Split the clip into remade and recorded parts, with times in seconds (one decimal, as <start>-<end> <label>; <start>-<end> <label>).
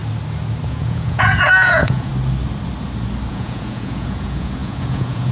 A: 0.0-0.7 recorded; 0.7-2.1 remade; 2.1-3.3 recorded; 3.3-5.3 remade